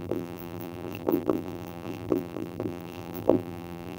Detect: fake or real fake